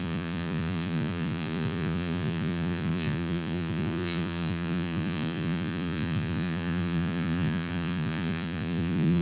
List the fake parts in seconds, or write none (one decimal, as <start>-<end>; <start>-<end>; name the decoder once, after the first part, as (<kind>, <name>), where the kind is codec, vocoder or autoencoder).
0.0-9.2 (vocoder, Vocos)